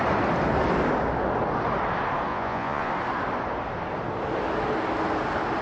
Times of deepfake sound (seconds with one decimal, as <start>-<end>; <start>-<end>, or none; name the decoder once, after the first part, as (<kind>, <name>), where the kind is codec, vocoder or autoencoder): 2.3-2.9 (vocoder, Vocos)